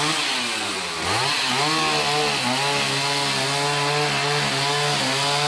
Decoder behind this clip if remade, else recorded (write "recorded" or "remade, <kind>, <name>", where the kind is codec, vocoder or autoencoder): recorded